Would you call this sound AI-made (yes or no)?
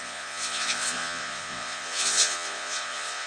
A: yes